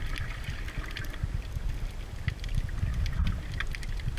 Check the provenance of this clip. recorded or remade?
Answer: recorded